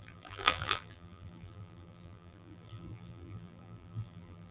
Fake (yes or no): yes